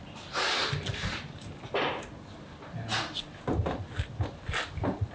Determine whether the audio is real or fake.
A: real